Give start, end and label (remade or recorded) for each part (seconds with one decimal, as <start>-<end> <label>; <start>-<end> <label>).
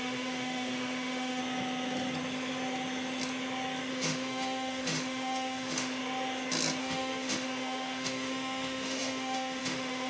0.0-1.4 remade; 1.4-3.9 recorded; 3.9-6.0 remade; 6.0-6.8 recorded; 6.8-10.1 remade